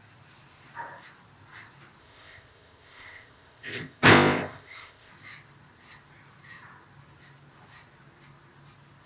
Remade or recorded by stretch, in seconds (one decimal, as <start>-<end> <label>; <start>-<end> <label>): 0.0-2.0 recorded; 2.0-5.1 remade; 5.1-9.1 recorded